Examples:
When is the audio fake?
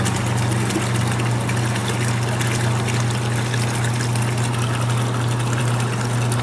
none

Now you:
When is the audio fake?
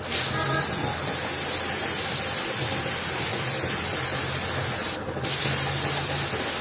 none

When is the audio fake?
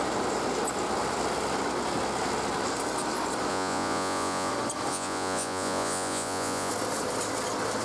3.5-4.5 (vocoder, Vocos); 4.9-6.7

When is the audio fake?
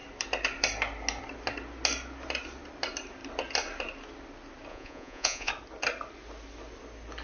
4.7-5.5 (vocoder, Vocos)